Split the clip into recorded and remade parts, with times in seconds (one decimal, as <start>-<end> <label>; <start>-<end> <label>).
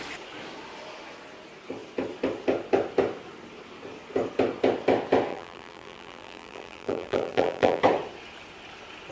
0.0-5.3 recorded; 5.3-7.8 remade; 7.8-9.1 recorded